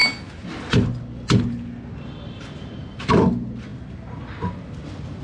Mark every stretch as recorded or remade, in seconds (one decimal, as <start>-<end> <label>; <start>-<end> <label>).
0.0-5.2 recorded